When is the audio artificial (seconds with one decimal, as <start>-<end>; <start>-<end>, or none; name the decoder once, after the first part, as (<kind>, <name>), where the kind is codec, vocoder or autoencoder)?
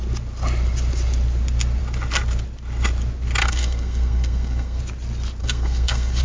3.4-4.8 (codec, SNAC); 5.4-6.2